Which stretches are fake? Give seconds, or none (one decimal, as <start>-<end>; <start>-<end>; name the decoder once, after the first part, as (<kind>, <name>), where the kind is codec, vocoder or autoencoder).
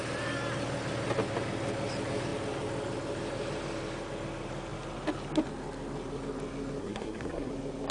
6.8-7.5 (codec, SNAC)